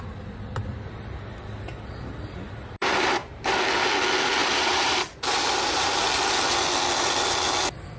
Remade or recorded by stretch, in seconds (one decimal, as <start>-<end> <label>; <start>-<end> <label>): 0.0-0.7 recorded; 0.7-3.6 remade; 3.6-4.4 recorded; 4.4-6.3 remade; 6.3-8.0 recorded